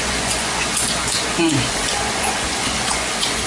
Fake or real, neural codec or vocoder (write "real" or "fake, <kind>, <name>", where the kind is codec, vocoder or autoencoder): fake, vocoder, Vocos